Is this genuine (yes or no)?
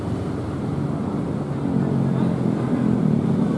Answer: yes